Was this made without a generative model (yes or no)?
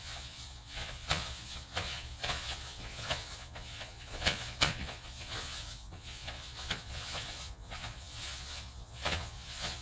no